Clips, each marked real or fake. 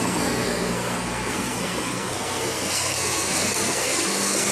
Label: fake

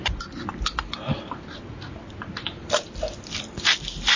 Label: real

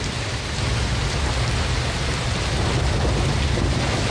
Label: real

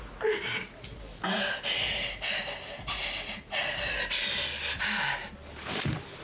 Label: real